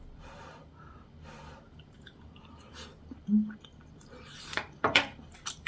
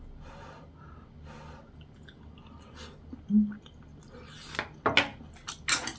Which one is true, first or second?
second